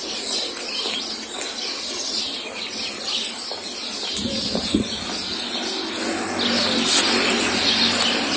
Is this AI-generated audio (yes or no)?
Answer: no